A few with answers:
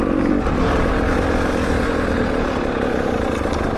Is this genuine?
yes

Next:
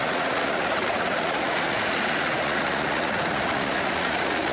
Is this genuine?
no